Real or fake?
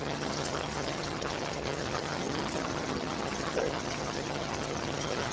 fake